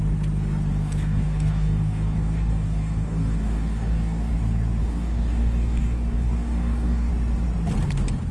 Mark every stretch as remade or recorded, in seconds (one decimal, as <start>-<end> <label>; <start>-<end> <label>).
0.0-0.7 recorded; 0.7-4.3 remade; 4.3-4.8 recorded; 4.8-7.1 remade; 7.1-8.3 recorded